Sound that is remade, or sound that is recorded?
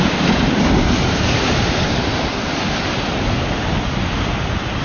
remade